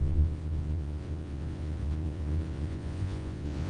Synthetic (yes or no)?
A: yes